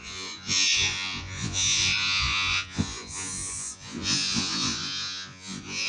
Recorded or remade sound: remade